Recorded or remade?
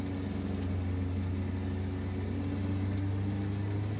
recorded